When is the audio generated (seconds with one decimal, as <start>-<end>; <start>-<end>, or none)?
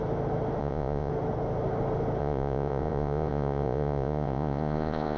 0.6-1.1; 2.2-5.2